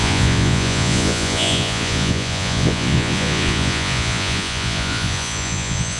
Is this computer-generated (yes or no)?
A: yes